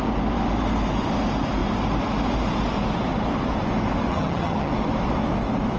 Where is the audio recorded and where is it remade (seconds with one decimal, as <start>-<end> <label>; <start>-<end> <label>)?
0.0-4.1 recorded; 4.1-4.7 remade; 4.7-5.8 recorded